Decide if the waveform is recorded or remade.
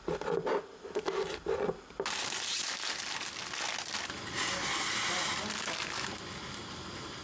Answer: recorded